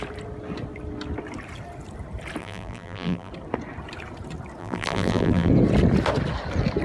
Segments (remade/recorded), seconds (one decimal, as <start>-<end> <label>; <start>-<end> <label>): 0.0-2.4 recorded; 2.4-3.3 remade; 3.3-4.6 recorded; 4.6-5.5 remade; 5.5-6.8 recorded